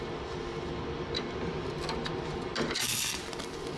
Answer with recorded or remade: recorded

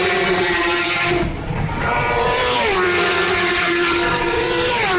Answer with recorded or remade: remade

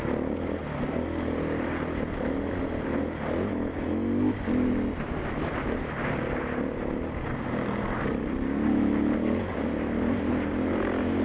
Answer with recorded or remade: recorded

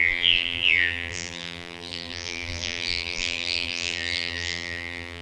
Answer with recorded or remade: remade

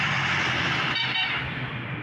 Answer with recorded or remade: remade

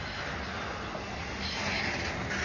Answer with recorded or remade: recorded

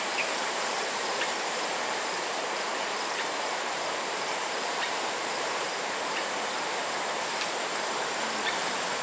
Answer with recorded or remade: remade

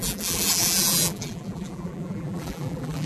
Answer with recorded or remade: remade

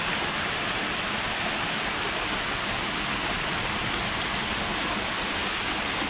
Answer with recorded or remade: recorded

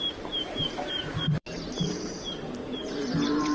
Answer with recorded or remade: remade